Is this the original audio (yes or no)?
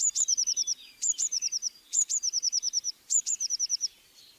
no